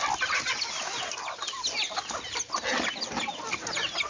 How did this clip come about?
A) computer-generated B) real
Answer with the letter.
B